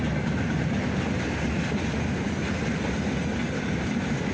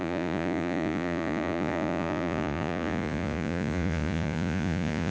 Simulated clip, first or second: second